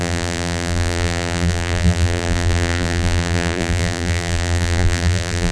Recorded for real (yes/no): no